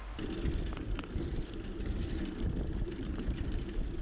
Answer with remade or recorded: remade